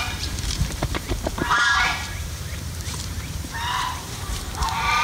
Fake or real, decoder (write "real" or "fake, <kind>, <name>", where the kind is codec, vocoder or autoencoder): fake, vocoder, BigVGAN v2